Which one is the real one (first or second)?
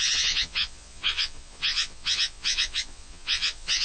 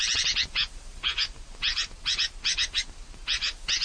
second